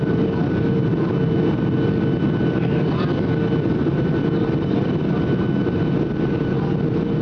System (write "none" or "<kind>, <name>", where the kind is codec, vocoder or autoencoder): vocoder, BigVGAN v2